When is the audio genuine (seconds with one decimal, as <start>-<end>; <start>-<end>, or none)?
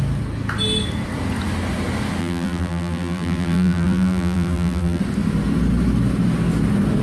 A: 0.0-2.2; 5.0-7.0